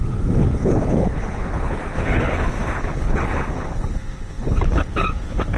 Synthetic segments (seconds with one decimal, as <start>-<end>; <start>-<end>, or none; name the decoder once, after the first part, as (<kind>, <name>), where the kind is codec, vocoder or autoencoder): 0.0-5.6 (codec, HILCodec)